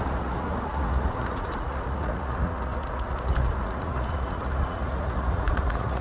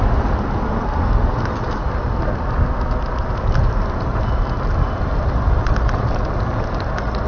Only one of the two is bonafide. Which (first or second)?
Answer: second